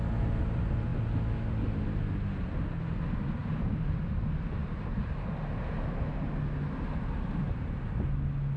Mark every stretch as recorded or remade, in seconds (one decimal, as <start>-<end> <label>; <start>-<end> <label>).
0.0-3.4 recorded; 3.4-4.0 remade; 4.0-4.6 recorded; 4.6-5.1 remade; 5.1-8.6 recorded